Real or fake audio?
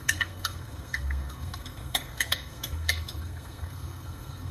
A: fake